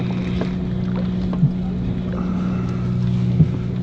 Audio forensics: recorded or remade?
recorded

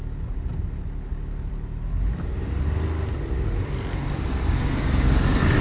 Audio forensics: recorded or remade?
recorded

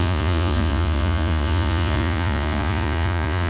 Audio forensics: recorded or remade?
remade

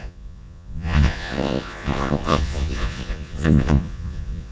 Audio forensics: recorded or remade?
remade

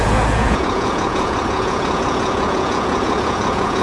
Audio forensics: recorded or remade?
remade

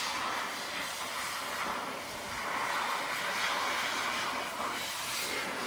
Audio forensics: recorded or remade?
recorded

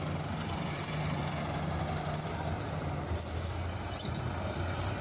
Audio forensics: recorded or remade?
recorded